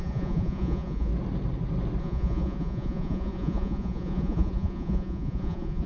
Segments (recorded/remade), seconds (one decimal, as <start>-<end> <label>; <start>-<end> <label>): 0.0-1.1 remade; 1.1-2.0 recorded; 2.0-5.9 remade